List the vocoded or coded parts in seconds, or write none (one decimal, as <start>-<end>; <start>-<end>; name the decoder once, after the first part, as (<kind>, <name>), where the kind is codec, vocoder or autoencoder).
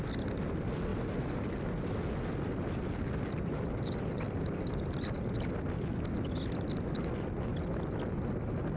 none